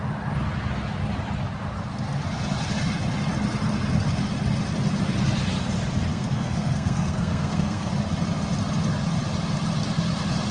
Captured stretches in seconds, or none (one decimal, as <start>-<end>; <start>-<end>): 0.0-6.1; 7.9-10.5